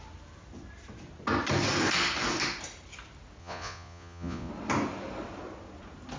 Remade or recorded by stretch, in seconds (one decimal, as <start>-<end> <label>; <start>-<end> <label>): 0.0-3.4 recorded; 3.4-4.5 remade; 4.5-6.2 recorded